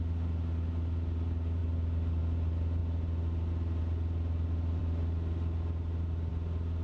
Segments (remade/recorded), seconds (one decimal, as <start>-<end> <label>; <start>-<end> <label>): 0.0-6.8 recorded